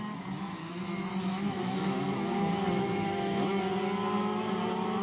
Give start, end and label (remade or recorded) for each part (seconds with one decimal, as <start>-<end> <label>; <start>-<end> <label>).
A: 0.0-0.6 recorded; 0.6-3.6 remade; 3.6-5.0 recorded